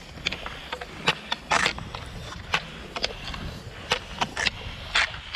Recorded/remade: recorded